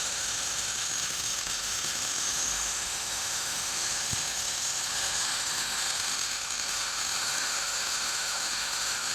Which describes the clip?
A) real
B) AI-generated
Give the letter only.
B